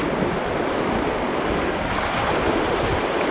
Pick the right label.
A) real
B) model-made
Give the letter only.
A